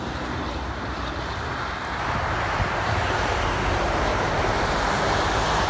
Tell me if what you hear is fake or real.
fake